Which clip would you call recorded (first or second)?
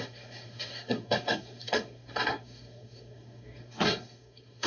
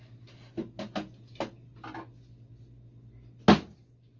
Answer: second